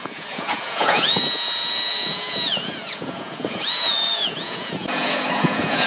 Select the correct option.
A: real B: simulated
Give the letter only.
B